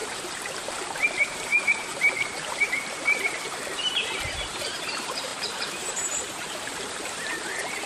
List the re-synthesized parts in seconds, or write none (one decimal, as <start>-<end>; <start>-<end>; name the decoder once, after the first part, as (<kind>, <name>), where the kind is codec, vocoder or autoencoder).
0.0-7.9 (vocoder, BigVGAN v2)